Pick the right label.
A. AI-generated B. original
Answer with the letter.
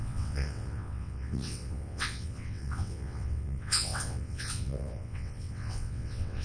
A